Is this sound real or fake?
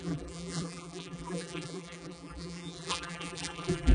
fake